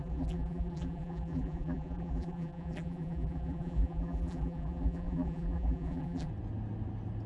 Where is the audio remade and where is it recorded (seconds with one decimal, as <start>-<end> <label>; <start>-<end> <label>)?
0.0-6.3 remade; 6.3-7.3 recorded